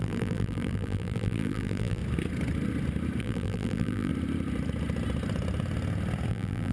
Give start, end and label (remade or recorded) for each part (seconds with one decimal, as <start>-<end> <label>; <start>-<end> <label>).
0.0-2.0 remade; 2.0-3.2 recorded; 3.2-4.1 remade; 4.1-6.3 recorded; 6.3-6.7 remade